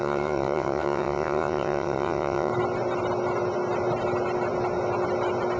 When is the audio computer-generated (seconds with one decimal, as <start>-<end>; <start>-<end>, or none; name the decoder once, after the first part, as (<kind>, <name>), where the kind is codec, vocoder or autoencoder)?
0.0-2.5 (vocoder, WaveNeXt)